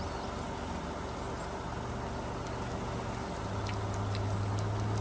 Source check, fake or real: real